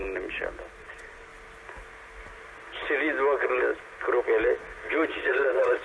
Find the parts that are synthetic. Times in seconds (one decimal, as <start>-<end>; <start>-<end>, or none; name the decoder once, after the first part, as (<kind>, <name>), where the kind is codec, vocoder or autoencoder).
0.8-1.3 (vocoder, WaveNeXt); 4.8-5.8